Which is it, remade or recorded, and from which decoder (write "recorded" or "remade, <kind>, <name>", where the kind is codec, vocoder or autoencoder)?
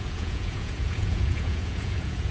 remade, vocoder, Vocos